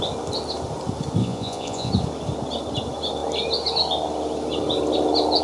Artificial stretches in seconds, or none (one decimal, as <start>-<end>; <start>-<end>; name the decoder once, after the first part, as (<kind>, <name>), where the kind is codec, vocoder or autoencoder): 1.2-1.9 (vocoder, Vocos)